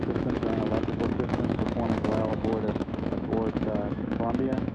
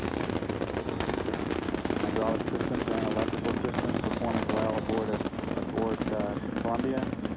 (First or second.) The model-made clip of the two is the first